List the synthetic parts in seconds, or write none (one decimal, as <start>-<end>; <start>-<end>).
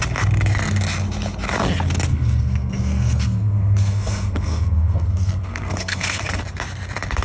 2.1-6.4